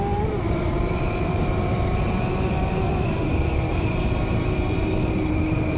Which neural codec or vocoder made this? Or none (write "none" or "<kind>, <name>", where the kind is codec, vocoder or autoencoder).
vocoder, BigVGAN v2